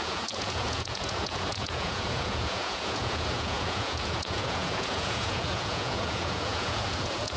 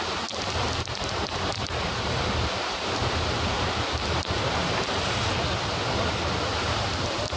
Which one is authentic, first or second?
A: second